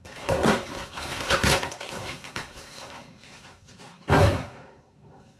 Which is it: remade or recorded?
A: remade